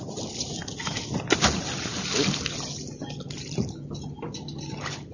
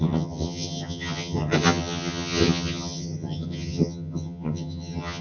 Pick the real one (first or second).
first